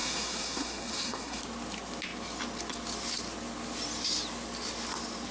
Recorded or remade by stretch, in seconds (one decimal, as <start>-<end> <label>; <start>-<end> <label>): 0.0-1.4 remade; 1.4-5.3 recorded